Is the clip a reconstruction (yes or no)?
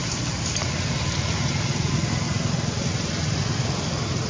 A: no